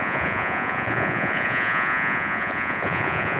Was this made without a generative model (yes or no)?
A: no